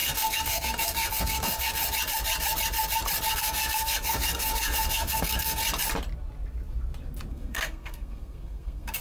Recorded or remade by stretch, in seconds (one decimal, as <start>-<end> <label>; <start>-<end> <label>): 0.0-1.8 remade; 1.8-3.3 recorded; 3.3-5.6 remade; 5.6-7.3 recorded; 7.3-9.0 remade